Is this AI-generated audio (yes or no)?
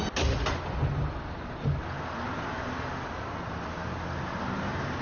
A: no